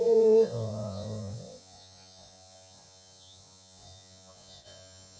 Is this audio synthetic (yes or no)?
yes